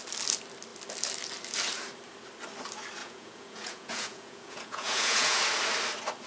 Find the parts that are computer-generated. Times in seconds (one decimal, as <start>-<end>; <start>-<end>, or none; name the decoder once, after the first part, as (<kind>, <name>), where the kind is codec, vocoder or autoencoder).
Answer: 3.0-5.4 (vocoder, Vocos)